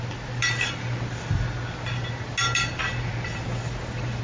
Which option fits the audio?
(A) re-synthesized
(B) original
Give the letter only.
B